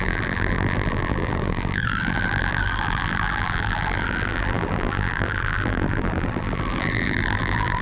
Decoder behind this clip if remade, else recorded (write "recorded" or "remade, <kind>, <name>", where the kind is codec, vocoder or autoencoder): remade, vocoder, BigVGAN v2